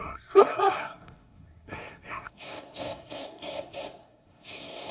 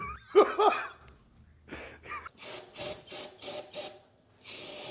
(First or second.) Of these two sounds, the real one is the second